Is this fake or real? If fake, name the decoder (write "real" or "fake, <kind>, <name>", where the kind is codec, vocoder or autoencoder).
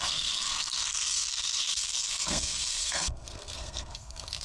fake, codec, SNAC